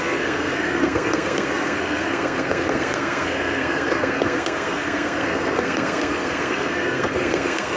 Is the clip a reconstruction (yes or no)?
yes